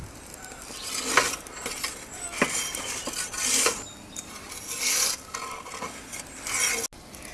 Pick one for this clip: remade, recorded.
recorded